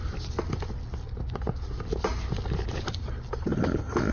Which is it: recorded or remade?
recorded